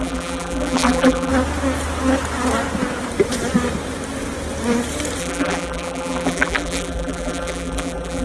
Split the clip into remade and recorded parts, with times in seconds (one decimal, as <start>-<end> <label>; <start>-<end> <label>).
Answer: 0.0-1.3 remade; 1.3-5.2 recorded; 5.2-8.2 remade